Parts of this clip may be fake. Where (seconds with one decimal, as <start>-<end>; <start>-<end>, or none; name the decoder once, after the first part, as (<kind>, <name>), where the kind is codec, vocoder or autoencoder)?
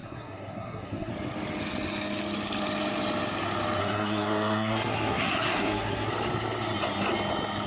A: 0.0-1.1 (codec, SNAC); 3.8-6.1